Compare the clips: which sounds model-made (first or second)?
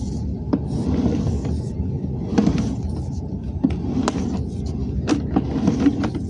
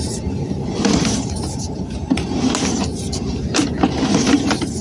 second